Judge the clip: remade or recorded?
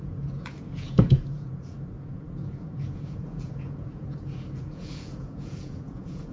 remade